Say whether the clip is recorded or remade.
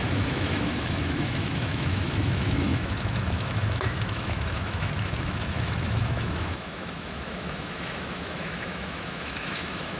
remade